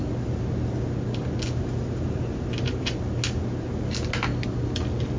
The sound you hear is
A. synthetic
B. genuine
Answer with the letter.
B